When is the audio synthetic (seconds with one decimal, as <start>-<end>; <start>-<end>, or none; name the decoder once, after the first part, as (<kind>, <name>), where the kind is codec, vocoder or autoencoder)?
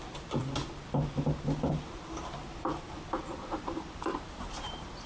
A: 0.0-0.4 (vocoder, BigVGAN v2); 3.5-5.1